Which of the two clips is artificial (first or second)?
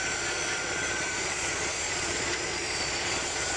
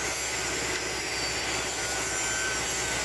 first